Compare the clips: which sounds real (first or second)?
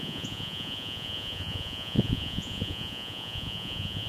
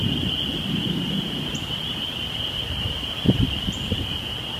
second